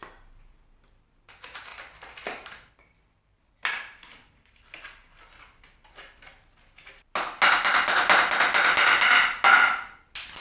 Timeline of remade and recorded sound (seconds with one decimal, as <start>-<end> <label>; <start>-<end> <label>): 0.0-10.4 recorded

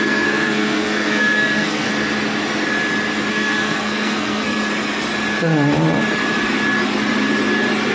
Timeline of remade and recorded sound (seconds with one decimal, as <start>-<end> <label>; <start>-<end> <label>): 0.0-1.9 remade; 1.9-3.3 recorded; 3.3-4.6 remade; 4.6-7.9 recorded

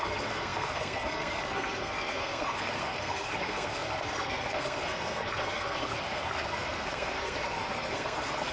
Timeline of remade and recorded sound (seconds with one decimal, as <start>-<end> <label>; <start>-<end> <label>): 0.0-8.5 remade

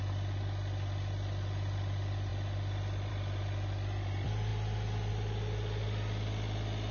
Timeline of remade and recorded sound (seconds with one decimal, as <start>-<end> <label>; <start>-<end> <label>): 0.0-6.9 recorded